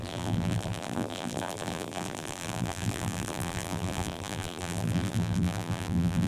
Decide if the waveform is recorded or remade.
remade